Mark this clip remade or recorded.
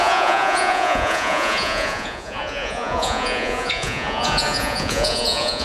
remade